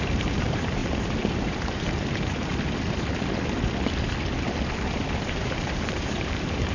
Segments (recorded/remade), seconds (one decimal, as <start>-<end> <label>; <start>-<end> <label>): 0.0-0.8 remade; 0.8-1.4 recorded; 1.4-2.5 remade; 2.5-5.3 recorded; 5.3-6.7 remade